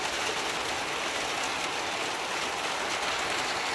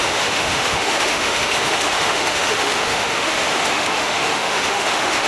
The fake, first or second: second